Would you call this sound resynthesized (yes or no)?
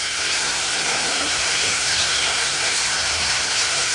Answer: yes